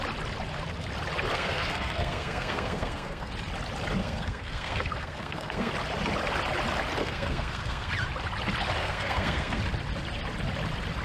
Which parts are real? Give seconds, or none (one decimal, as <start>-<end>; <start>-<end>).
0.0-1.3; 3.3-4.0; 5.7-7.0; 7.9-8.8; 9.6-11.0